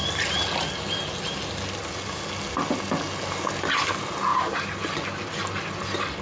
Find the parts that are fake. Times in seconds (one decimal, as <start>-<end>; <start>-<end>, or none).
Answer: none